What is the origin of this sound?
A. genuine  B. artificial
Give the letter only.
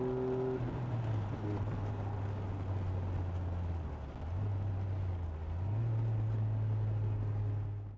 A